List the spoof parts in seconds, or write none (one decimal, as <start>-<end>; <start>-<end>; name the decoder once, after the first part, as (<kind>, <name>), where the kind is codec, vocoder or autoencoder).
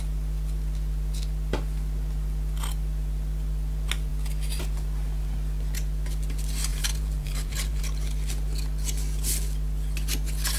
6.7-7.8 (vocoder, BigVGAN v2)